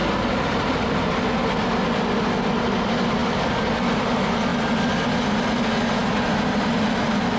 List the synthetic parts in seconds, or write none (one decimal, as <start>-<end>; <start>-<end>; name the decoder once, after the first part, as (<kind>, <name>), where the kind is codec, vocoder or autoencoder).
0.0-1.0 (vocoder, BigVGAN v2); 3.2-3.7; 4.5-5.1